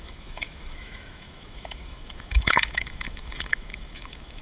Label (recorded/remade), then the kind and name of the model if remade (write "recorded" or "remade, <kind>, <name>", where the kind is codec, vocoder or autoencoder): remade, autoencoder, DAC-VAE